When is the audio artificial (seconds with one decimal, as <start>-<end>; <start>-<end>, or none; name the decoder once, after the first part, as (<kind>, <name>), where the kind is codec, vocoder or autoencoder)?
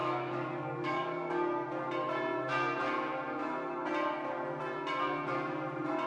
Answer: 0.0-1.3 (codec, DAC)